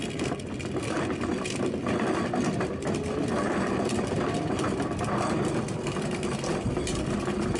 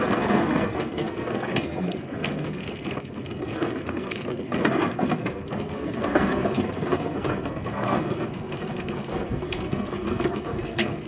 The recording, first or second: first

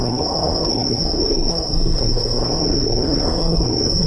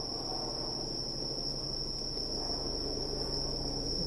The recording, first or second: second